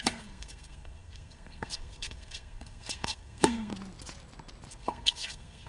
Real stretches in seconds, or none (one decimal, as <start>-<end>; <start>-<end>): 3.7-4.7